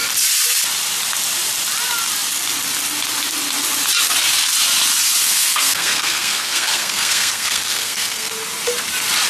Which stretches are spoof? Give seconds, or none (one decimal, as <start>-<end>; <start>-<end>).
5.2-8.3